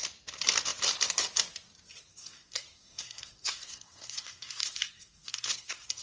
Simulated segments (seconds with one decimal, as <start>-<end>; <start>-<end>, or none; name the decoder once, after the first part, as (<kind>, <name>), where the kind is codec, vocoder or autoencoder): 2.1-6.0 (codec, SNAC)